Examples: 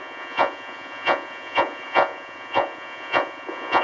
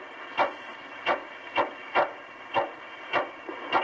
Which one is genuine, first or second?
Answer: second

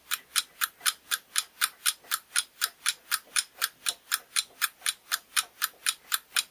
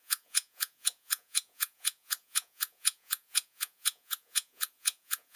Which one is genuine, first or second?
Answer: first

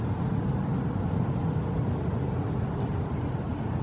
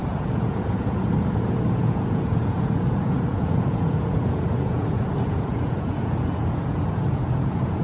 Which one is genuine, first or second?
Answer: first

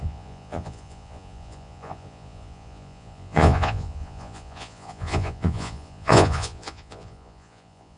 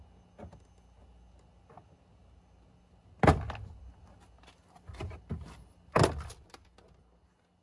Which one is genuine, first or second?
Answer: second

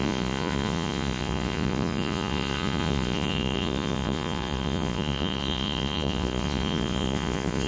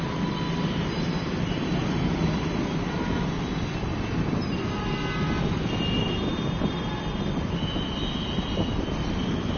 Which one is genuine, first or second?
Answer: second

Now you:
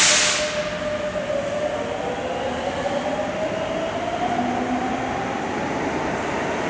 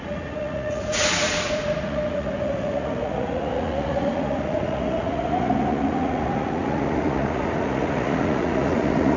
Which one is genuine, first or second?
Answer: first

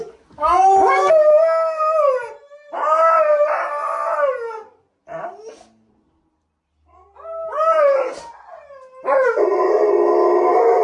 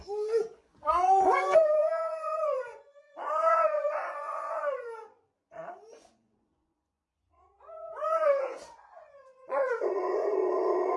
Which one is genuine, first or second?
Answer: first